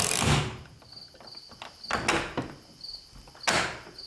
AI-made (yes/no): no